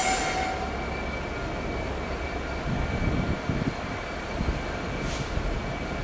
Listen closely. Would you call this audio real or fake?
real